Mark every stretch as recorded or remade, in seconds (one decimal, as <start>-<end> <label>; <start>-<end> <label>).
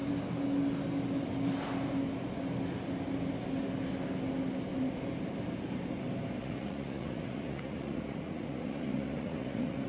0.0-6.4 recorded; 6.4-9.9 remade